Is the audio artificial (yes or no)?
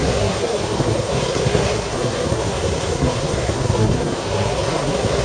yes